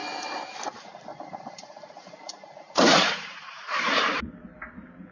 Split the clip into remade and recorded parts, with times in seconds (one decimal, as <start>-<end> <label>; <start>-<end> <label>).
0.0-0.5 remade; 0.5-1.1 recorded; 1.1-4.2 remade; 4.2-5.1 recorded